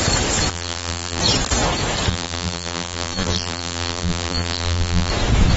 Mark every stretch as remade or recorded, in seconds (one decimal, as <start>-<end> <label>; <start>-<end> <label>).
0.0-0.5 recorded; 0.5-1.2 remade; 1.2-2.1 recorded; 2.1-5.1 remade; 5.1-5.6 recorded